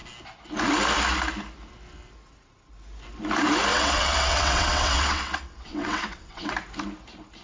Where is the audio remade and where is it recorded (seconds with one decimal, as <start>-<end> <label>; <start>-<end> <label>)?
0.0-3.7 recorded; 3.7-6.5 remade; 6.5-7.4 recorded